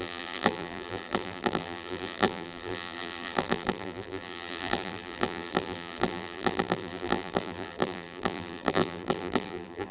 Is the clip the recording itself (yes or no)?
no